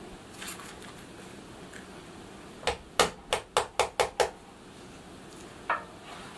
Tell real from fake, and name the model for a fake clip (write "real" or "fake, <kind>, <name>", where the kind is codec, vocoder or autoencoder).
real